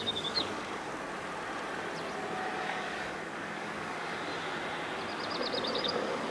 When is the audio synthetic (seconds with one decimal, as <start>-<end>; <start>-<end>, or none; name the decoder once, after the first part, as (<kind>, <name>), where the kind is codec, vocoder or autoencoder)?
0.0-0.9 (codec, DAC); 2.6-4.3; 5.8-6.3